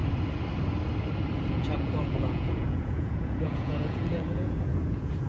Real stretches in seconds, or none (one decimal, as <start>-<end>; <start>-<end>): 0.0-1.5

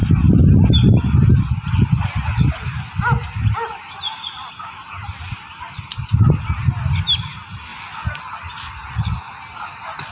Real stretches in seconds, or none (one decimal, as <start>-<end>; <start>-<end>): 0.0-10.1

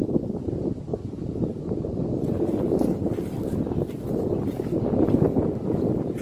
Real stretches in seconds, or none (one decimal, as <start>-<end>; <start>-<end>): 0.0-6.2

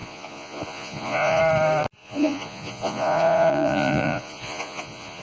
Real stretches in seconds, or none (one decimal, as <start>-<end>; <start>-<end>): 1.4-2.0

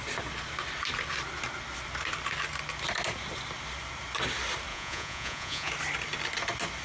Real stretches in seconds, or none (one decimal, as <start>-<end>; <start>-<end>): 0.0-4.7; 5.7-6.8